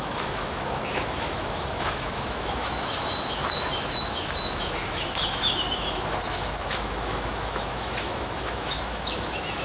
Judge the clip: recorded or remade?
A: remade